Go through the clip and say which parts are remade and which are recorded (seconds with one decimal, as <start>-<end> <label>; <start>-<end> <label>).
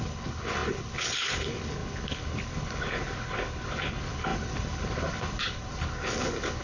0.0-6.6 remade